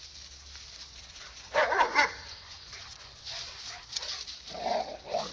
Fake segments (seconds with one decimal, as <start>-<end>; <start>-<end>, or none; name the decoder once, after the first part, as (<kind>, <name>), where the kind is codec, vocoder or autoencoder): 0.9-3.6 (vocoder, Vocos)